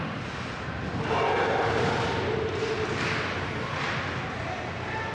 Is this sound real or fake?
real